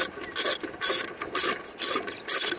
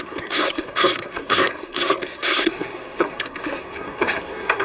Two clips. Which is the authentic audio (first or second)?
first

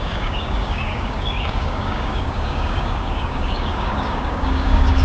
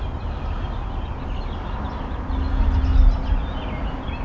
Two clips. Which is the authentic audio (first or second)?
second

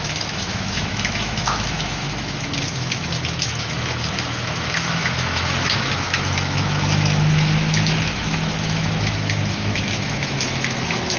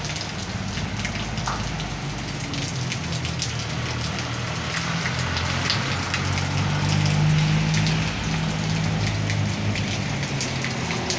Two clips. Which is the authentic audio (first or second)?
second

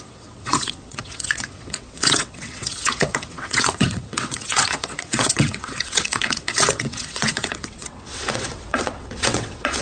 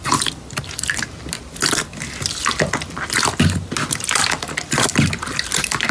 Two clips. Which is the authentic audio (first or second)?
second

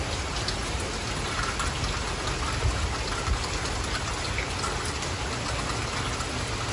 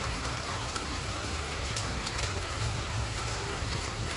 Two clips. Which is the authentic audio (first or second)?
first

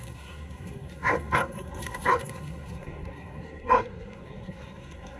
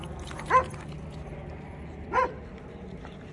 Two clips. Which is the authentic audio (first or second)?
second